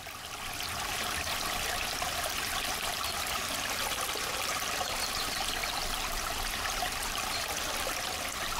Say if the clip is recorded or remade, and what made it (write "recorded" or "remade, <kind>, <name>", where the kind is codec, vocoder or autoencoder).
recorded